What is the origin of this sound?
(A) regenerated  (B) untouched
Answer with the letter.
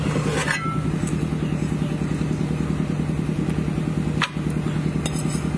B